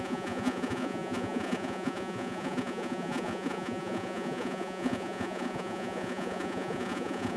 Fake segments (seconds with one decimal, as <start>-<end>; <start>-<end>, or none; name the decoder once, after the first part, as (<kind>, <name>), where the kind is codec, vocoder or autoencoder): 0.0-7.4 (vocoder, Vocos)